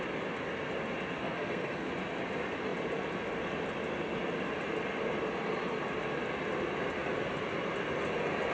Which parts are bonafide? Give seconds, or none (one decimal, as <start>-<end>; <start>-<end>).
0.0-1.2; 1.9-8.5